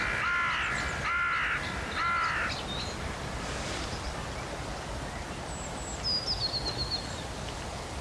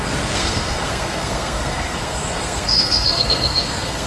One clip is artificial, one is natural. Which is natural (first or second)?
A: first